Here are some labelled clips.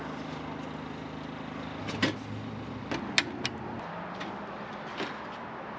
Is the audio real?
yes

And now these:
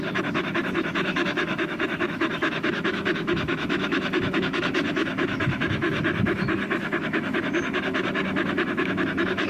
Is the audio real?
no